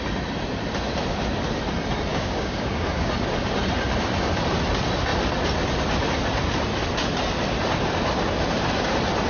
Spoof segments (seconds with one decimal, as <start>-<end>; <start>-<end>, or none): 2.1-3.1